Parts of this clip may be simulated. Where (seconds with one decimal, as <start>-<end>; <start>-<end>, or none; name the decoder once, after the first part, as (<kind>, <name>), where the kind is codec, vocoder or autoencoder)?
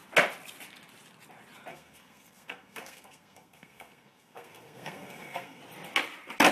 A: 1.7-5.6 (codec, SNAC)